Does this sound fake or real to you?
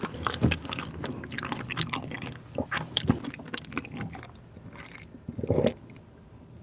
real